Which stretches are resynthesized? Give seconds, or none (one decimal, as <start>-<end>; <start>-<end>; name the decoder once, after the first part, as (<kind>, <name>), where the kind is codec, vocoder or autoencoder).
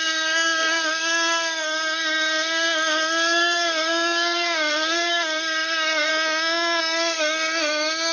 0.0-6.1 (codec, SNAC); 6.8-8.1